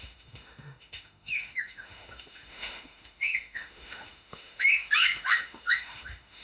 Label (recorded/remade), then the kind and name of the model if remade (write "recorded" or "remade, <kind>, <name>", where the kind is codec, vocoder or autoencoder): remade, autoencoder, DAC-VAE